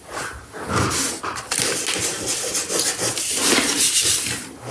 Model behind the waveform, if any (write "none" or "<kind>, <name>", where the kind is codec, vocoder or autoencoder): none